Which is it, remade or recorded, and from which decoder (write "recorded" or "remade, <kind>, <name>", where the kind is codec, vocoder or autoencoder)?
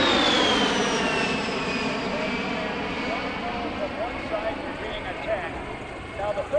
recorded